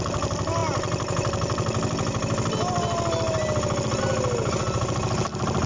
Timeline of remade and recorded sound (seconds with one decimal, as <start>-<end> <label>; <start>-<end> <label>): 0.0-5.7 recorded